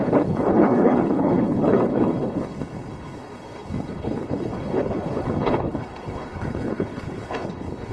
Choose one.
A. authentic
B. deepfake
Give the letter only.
B